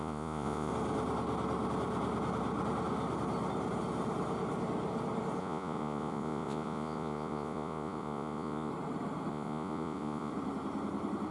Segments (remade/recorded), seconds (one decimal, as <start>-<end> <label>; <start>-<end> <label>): 0.0-0.7 remade; 0.7-5.4 recorded; 5.4-8.7 remade; 8.7-9.3 recorded; 9.3-10.3 remade; 10.3-11.3 recorded